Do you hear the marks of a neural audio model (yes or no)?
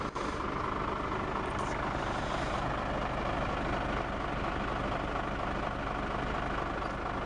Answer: no